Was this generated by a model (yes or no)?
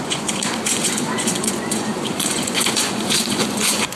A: yes